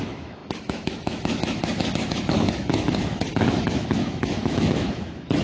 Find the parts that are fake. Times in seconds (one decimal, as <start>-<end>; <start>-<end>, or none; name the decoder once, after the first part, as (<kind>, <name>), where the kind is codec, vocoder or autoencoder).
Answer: 0.0-5.4 (autoencoder, DAC-VAE)